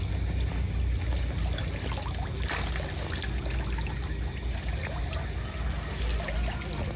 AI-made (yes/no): no